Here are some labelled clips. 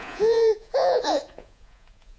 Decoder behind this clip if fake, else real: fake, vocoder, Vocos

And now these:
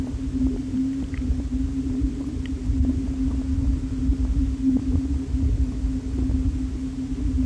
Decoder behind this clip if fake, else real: real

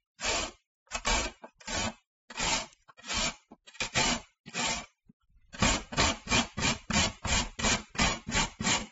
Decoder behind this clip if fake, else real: real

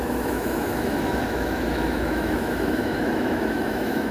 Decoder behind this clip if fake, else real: fake, autoencoder, DAC-VAE